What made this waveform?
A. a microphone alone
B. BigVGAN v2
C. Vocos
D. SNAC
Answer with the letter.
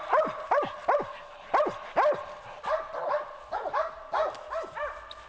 A